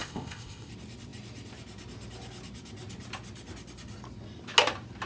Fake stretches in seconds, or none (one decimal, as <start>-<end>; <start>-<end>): 0.0-0.7